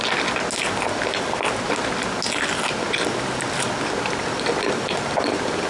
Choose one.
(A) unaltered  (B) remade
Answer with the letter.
A